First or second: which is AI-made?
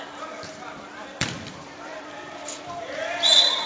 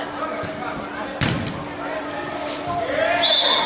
first